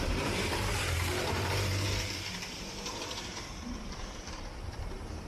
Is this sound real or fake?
fake